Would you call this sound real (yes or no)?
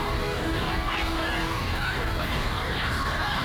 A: no